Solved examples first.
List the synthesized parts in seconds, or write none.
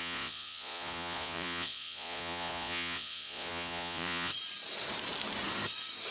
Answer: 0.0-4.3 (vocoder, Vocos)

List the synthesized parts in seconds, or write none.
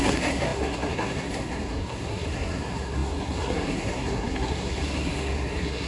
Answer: 0.0-5.9 (codec, SNAC)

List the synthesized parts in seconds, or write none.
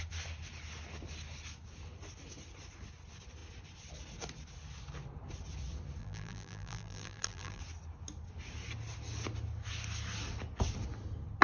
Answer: 6.0-7.6 (vocoder, BigVGAN v2)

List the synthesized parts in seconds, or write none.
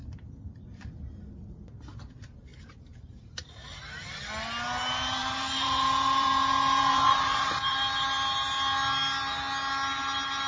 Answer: 2.5-4.1 (vocoder, BigVGAN v2); 5.2-8.0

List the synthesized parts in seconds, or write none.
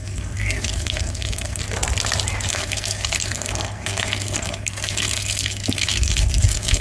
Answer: 0.0-1.6 (codec, SNAC); 2.5-6.8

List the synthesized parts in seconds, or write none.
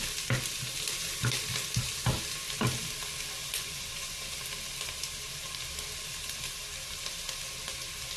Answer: 3.4-4.2 (vocoder, Vocos)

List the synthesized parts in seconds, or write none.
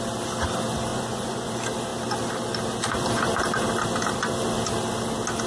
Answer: 0.9-1.5 (vocoder, Vocos)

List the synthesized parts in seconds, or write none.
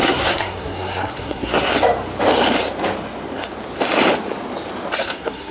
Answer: 0.0-1.7 (codec, SNAC); 5.0-5.5